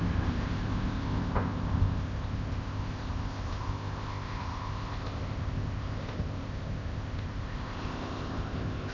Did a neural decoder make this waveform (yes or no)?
yes